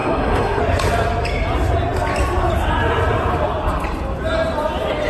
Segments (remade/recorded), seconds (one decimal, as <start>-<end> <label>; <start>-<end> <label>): 0.0-0.6 remade; 0.6-5.1 recorded